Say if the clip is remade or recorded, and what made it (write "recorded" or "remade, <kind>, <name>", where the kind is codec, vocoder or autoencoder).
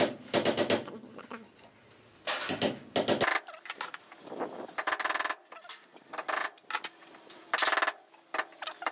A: recorded